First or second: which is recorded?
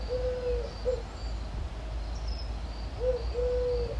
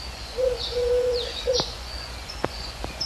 first